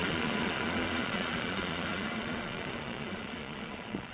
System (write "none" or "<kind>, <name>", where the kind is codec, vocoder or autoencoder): vocoder, Vocos